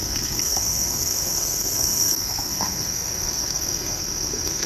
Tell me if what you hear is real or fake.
fake